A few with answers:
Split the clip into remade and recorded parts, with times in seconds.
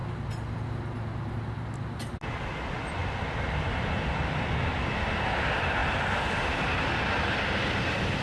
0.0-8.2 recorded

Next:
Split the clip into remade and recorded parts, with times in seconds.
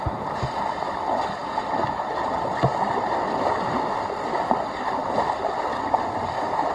0.0-6.7 recorded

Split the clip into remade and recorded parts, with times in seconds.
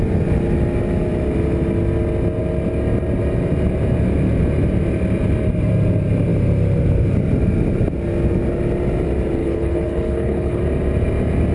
0.0-9.4 recorded; 9.4-10.6 remade; 10.6-11.5 recorded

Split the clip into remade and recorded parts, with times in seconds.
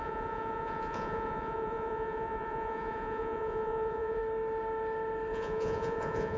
0.0-4.2 remade; 4.2-5.3 recorded; 5.3-6.4 remade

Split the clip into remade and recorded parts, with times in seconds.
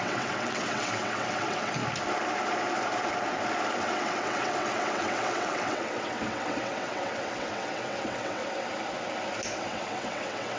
0.0-1.8 remade; 1.8-3.8 recorded; 3.8-8.4 remade; 8.4-9.5 recorded; 9.5-10.6 remade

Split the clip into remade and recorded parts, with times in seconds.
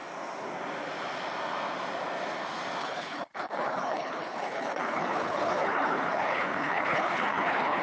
0.0-2.8 recorded; 2.8-7.8 remade